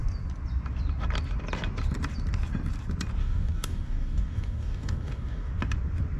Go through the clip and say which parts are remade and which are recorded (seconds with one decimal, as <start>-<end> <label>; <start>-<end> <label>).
0.0-3.2 recorded; 3.2-5.5 remade; 5.5-6.2 recorded

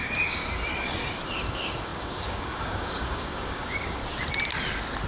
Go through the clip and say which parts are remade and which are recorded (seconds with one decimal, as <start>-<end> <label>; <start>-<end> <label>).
0.0-0.4 remade; 0.4-1.5 recorded; 1.5-4.0 remade; 4.0-5.1 recorded